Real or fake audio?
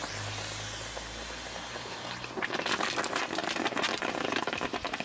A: real